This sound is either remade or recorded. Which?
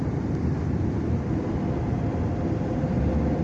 recorded